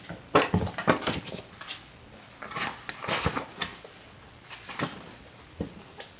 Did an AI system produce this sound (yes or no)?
no